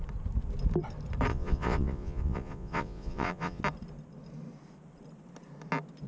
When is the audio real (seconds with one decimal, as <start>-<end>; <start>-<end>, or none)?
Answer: 0.0-1.3; 3.6-6.1